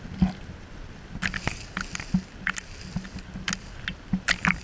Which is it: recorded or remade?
recorded